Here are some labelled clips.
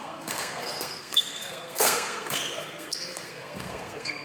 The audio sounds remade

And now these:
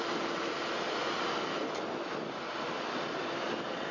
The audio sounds recorded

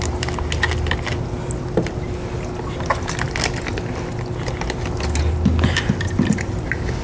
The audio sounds recorded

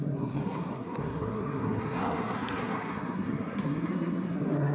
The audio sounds remade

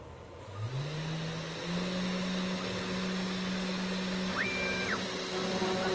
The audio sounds recorded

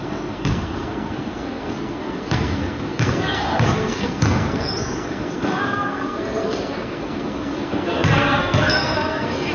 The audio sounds remade